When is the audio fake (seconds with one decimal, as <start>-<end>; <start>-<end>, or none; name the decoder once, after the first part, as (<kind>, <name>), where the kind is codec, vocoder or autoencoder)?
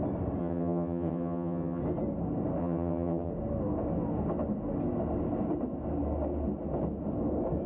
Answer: 0.4-1.8 (vocoder, HiFi-GAN); 2.6-3.3